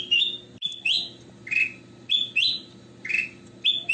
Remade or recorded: recorded